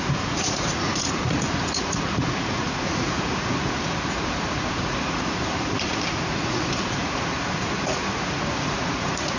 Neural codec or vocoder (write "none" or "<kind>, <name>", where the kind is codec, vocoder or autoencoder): vocoder, Vocos